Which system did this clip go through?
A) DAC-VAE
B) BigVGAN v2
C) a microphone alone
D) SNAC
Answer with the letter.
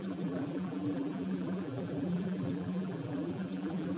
B